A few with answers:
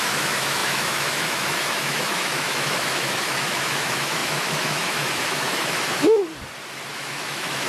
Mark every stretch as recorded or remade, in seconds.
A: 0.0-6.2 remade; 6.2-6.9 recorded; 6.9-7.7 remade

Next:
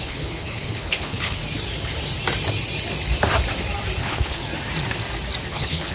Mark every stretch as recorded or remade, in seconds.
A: 0.0-1.4 remade; 1.4-4.0 recorded; 4.0-4.4 remade; 4.4-5.5 recorded; 5.5-5.9 remade

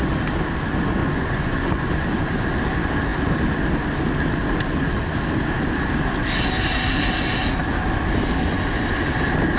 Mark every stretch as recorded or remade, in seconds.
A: 0.0-1.0 recorded; 1.0-1.9 remade; 1.9-9.6 recorded

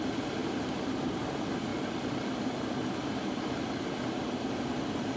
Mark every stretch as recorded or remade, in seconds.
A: 0.0-0.4 recorded; 0.4-1.2 remade; 1.2-5.2 recorded

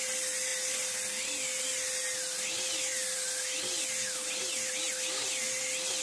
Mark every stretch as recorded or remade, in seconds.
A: 0.0-6.0 recorded

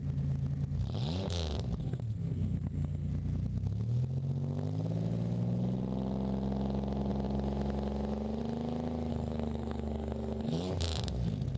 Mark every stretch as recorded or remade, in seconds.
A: 0.0-1.8 recorded; 1.8-3.1 remade; 3.1-9.1 recorded; 9.1-10.7 remade; 10.7-11.6 recorded

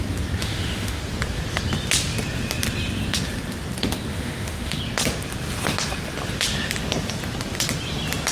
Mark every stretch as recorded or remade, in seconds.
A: 0.0-0.4 recorded; 0.4-1.0 remade; 1.0-4.1 recorded; 4.1-4.8 remade; 4.8-8.3 recorded